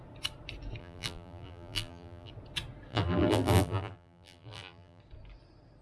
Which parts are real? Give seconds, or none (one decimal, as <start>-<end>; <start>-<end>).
0.0-0.8; 2.3-2.9; 5.0-5.8